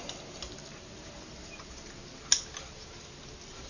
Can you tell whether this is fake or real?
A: real